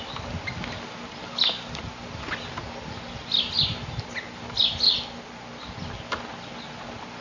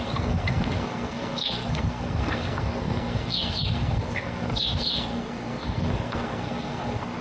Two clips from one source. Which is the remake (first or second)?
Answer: second